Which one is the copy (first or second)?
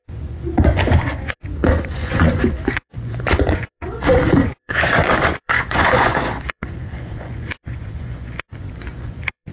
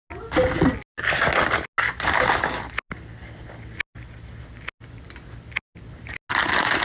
first